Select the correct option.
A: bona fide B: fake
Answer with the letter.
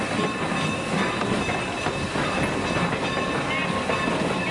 A